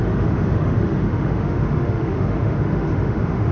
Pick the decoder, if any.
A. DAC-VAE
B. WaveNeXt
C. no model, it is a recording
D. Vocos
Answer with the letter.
A